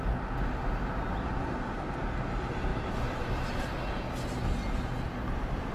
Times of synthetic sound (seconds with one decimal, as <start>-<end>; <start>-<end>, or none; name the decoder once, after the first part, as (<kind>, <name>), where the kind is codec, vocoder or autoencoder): 2.7-3.6 (vocoder, BigVGAN v2)